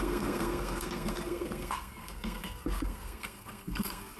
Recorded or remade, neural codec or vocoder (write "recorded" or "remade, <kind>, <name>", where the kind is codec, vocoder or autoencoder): remade, codec, SNAC